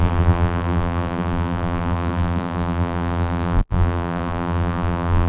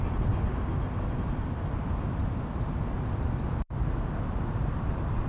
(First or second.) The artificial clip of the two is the first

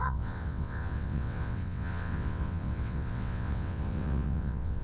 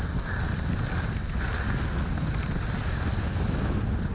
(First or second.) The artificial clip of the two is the first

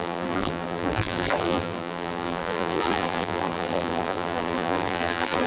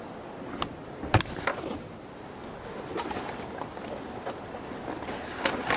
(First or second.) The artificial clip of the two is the first